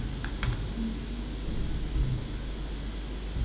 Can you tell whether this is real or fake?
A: real